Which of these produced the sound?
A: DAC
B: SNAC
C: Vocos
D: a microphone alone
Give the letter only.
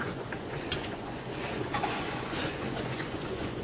C